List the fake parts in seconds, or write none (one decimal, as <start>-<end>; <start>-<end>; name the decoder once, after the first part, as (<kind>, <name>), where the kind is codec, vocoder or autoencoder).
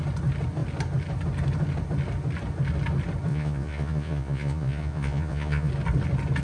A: 3.3-5.7 (vocoder, Vocos)